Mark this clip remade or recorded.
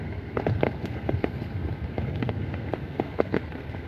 remade